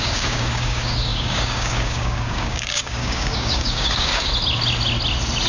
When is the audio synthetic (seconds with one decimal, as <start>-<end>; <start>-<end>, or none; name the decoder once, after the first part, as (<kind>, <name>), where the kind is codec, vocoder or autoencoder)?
0.0-4.3 (codec, DAC)